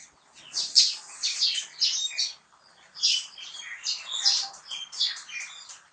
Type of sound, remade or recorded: recorded